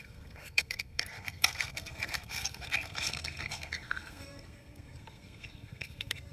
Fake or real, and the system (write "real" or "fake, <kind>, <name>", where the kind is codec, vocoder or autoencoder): fake, codec, SNAC